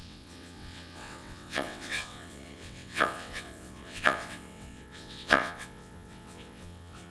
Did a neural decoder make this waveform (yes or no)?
yes